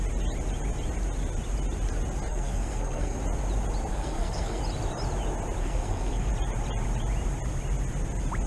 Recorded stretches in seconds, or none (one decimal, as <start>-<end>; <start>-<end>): 0.0-2.3; 3.2-3.9; 4.6-5.6; 6.3-8.5